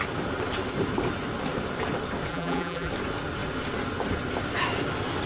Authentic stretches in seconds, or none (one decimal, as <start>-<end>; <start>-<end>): 0.0-2.3; 2.9-5.3